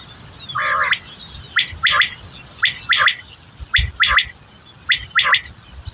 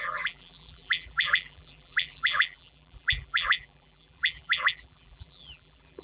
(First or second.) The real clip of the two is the first